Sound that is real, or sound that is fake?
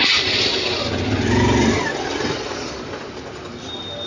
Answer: real